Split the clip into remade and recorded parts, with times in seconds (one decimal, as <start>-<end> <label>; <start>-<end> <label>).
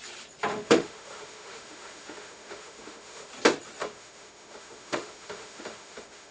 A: 0.0-0.5 recorded; 0.5-3.3 remade; 3.3-3.8 recorded; 3.8-6.3 remade